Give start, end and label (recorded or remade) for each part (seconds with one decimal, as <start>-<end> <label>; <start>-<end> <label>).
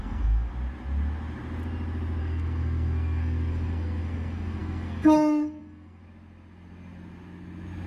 0.0-0.5 remade; 0.5-2.2 recorded; 2.2-6.0 remade; 6.0-7.9 recorded